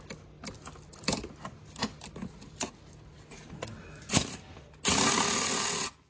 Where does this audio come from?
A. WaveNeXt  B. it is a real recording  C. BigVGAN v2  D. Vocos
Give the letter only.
B